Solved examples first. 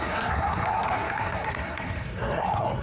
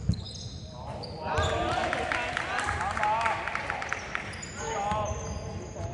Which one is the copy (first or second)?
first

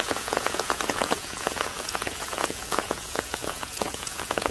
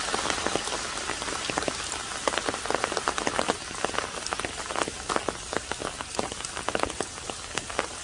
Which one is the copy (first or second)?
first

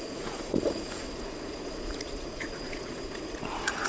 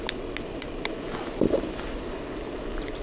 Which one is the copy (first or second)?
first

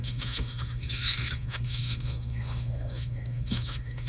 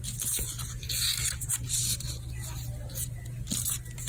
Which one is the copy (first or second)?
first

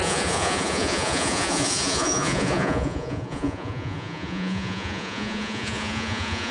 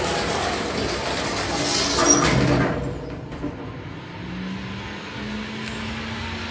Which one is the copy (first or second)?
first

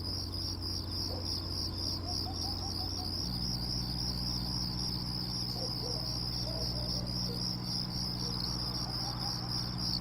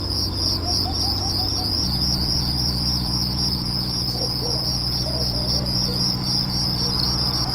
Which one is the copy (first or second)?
second